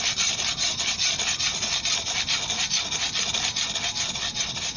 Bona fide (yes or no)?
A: yes